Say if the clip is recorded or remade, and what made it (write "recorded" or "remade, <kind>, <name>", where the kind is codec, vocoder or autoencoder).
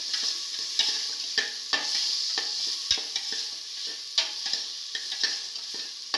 recorded